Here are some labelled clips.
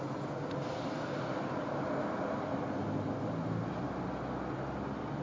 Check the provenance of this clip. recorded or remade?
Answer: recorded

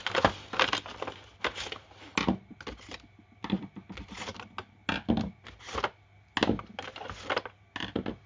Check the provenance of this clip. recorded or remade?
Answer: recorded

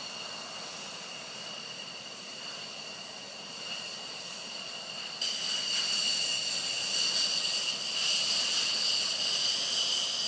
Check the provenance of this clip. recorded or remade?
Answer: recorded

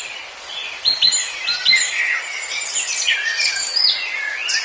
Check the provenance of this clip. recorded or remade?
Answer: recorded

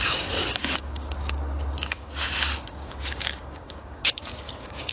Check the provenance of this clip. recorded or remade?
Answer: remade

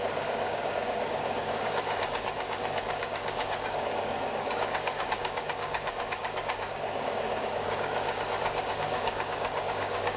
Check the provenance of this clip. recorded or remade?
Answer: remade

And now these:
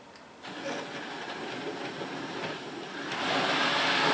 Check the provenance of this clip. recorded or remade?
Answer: recorded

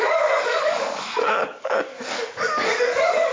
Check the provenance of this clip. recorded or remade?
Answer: remade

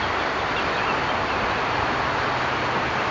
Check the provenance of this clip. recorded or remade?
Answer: recorded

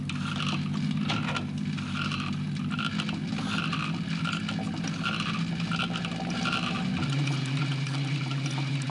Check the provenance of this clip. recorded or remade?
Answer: recorded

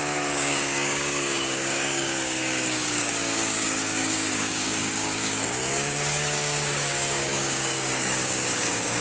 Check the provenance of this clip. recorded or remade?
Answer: remade